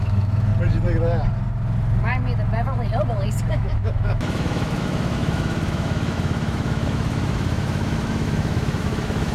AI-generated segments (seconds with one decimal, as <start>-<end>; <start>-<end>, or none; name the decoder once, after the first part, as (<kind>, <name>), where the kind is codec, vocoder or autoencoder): 0.0-0.5 (autoencoder, DAC-VAE); 3.5-9.3